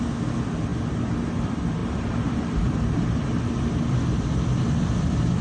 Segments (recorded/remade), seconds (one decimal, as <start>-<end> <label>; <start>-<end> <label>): 0.0-0.7 remade; 0.7-1.3 recorded; 1.3-5.4 remade